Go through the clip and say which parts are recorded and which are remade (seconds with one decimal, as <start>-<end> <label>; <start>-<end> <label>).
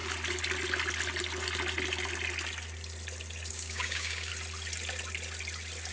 0.0-3.5 recorded; 3.5-4.3 remade; 4.3-5.9 recorded